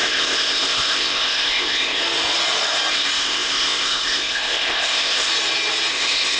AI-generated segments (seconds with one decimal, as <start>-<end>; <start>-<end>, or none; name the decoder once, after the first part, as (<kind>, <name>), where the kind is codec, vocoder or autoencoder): 0.0-2.0 (codec, ZipCodec); 2.9-5.3; 5.9-6.4